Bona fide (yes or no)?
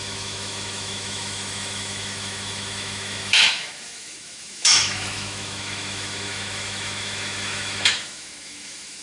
no